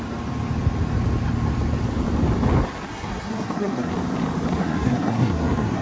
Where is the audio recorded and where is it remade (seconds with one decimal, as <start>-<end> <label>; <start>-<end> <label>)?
0.0-2.9 recorded; 2.9-3.9 remade; 3.9-4.6 recorded; 4.6-5.8 remade